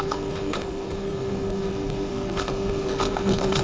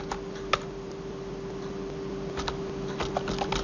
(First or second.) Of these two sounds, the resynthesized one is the first